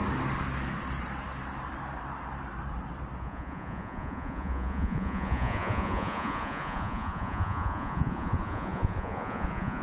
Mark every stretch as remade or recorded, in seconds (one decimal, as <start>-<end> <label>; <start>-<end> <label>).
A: 0.0-3.2 recorded; 3.2-9.8 remade